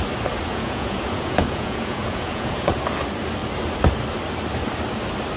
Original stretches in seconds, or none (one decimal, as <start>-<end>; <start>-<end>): 0.0-0.5; 2.7-5.4